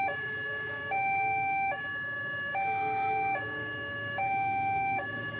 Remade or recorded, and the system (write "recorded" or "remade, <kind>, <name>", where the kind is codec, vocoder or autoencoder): remade, autoencoder, DAC-VAE